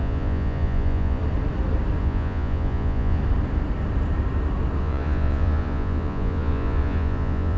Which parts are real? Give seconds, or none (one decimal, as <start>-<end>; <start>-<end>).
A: 1.2-2.0; 3.2-4.8